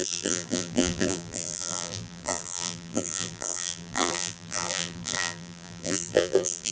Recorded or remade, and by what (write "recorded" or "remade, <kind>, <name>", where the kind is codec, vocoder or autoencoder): remade, vocoder, BigVGAN v2